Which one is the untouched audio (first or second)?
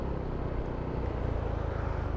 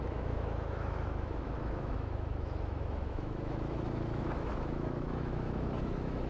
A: first